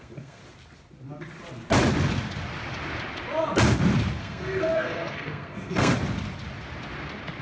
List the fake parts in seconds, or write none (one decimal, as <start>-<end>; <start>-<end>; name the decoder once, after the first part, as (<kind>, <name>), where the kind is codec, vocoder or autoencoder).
0.0-0.4 (codec, SNAC); 4.2-5.9